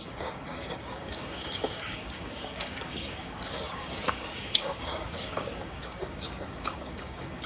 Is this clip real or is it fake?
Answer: fake